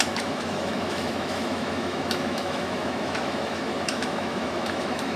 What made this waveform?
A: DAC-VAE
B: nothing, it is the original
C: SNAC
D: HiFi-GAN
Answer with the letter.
A